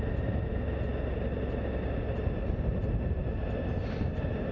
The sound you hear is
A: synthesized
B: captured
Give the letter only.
B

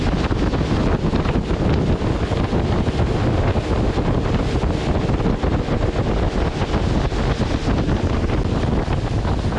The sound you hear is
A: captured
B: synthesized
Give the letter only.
A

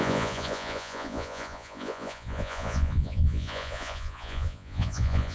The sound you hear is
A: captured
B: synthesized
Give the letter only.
B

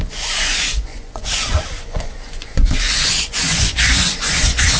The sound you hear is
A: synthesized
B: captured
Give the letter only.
A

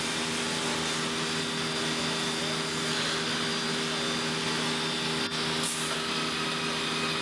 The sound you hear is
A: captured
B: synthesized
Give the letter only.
A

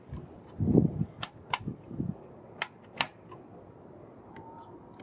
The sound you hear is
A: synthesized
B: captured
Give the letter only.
B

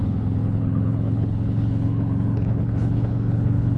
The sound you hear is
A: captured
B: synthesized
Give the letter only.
B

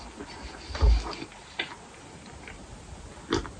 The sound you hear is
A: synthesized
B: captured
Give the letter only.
B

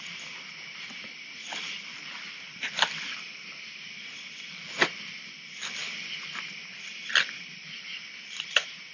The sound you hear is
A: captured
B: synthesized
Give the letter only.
B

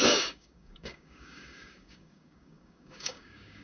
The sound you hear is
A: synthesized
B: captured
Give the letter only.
A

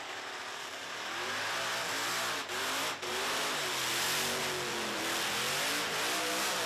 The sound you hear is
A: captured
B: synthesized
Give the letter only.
A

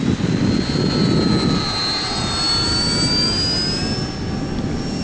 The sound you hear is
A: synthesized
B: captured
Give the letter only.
B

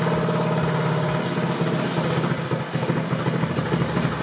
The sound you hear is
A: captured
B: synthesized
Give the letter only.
A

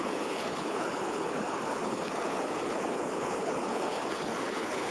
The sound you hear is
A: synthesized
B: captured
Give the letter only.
A